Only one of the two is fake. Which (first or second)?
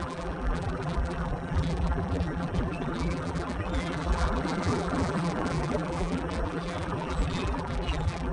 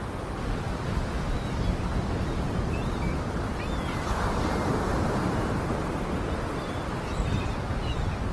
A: first